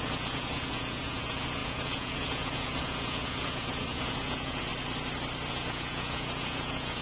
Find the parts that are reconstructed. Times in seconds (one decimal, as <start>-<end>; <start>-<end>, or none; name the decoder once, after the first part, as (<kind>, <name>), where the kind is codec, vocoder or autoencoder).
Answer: 0.0-4.7 (vocoder, Vocos); 5.5-7.0